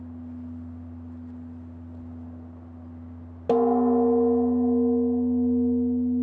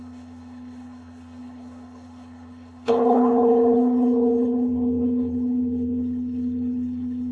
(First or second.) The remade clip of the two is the second